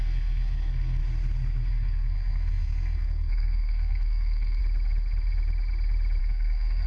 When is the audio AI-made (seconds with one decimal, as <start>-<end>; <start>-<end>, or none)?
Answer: 0.0-1.0; 1.7-4.6; 6.2-6.9